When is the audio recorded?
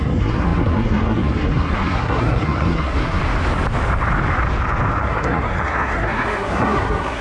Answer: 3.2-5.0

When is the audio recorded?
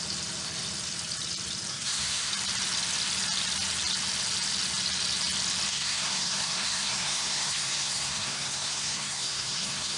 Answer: 0.0-1.7; 2.3-5.7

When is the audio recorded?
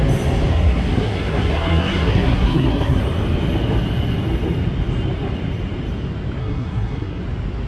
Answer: 0.0-0.5; 3.0-6.4; 7.2-7.7